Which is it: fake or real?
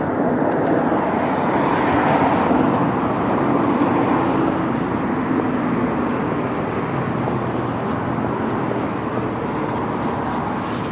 real